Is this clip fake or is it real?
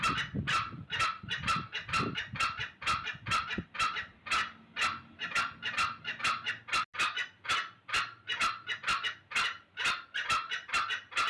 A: real